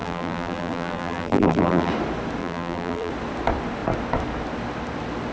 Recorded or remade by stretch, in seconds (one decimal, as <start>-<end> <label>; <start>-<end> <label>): 0.0-1.9 remade; 1.9-2.4 recorded; 2.4-3.1 remade; 3.1-5.3 recorded